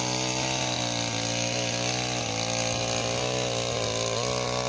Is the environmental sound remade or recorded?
recorded